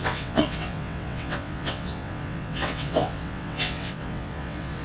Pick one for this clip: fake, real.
fake